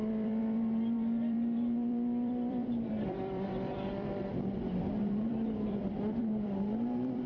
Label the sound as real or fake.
fake